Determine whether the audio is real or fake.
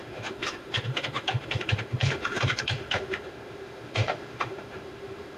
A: fake